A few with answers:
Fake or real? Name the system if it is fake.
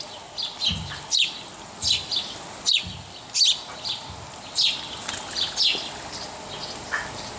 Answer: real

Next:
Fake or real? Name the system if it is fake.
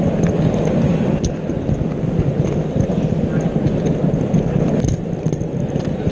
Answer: real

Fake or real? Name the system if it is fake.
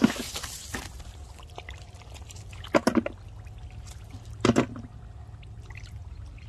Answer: real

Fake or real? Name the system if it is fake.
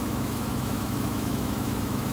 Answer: fake, autoencoder, DAC-VAE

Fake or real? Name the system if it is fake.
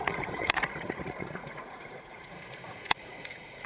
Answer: fake, vocoder, Vocos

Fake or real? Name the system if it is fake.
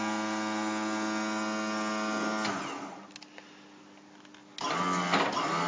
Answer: real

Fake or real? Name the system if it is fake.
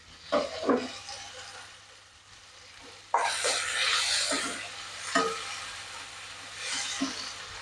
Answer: real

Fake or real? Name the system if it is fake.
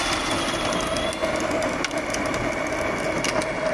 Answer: real